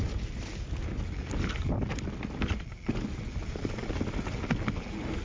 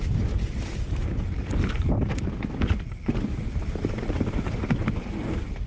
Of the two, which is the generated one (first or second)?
second